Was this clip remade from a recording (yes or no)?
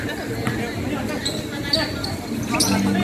no